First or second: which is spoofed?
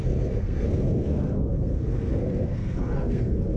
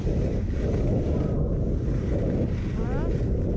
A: first